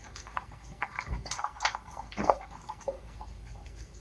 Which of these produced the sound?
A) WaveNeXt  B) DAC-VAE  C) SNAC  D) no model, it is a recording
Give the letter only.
C